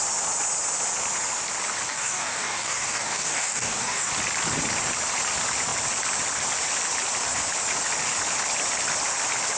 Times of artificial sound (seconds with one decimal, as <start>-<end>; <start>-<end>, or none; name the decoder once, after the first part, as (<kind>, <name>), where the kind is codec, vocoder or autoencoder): 1.9-4.1 (codec, DAC)

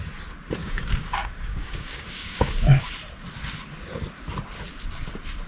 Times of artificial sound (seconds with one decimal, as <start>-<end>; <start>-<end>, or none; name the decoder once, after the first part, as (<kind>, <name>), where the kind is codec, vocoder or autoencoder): 0.6-2.9 (codec, DAC)

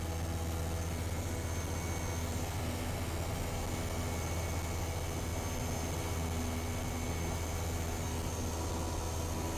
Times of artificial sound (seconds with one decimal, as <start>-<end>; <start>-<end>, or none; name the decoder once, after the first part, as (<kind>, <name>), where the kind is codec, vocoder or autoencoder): none

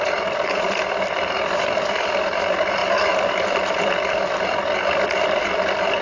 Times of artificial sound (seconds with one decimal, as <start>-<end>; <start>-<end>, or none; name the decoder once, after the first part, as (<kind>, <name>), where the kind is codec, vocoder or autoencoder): none

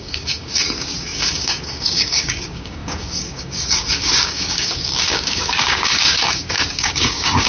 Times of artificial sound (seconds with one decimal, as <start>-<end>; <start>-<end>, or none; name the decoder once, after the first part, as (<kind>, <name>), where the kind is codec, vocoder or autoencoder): 0.0-7.5 (codec, DAC)

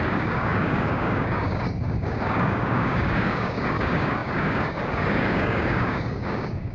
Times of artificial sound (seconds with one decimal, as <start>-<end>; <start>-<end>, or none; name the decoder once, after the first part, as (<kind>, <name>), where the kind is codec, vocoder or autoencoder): 0.0-6.7 (codec, DAC)